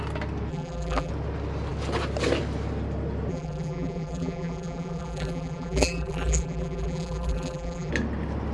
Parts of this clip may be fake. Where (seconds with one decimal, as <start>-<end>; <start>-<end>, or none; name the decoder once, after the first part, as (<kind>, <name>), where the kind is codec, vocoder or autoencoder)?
0.5-1.1 (vocoder, BigVGAN v2); 3.3-7.9